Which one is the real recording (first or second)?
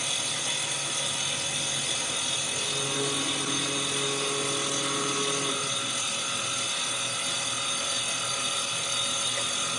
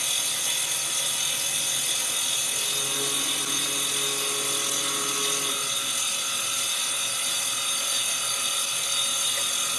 second